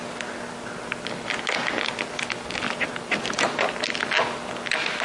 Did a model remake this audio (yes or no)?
no